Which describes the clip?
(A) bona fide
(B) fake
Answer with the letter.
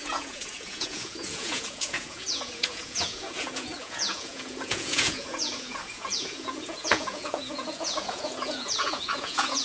B